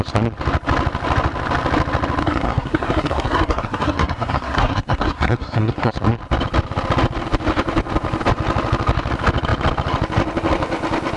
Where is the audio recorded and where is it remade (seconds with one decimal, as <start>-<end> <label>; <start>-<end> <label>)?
0.0-2.2 recorded; 2.2-5.9 remade; 5.9-11.2 recorded